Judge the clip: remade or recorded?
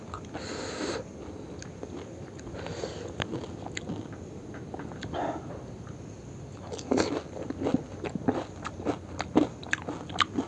recorded